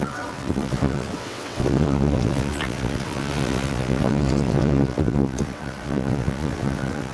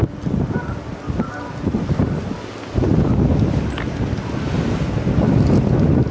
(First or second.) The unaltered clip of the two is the second